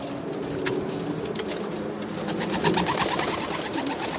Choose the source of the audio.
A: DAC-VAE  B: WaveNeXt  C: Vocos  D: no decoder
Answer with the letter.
D